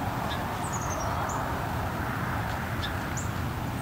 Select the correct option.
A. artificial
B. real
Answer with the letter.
B